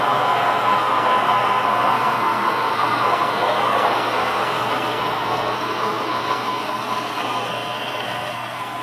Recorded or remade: remade